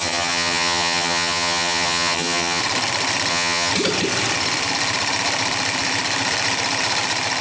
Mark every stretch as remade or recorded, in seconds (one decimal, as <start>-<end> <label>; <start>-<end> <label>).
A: 0.0-2.6 remade; 2.6-3.3 recorded; 3.3-3.7 remade; 3.7-7.4 recorded